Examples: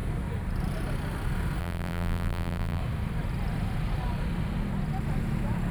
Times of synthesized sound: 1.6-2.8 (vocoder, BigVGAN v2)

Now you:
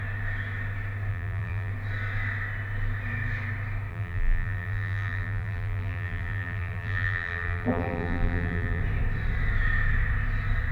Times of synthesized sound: 1.1-1.7 (vocoder, BigVGAN v2); 3.9-8.8

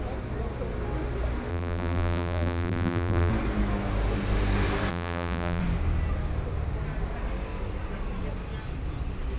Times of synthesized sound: 1.5-3.3 (vocoder, BigVGAN v2); 4.9-5.6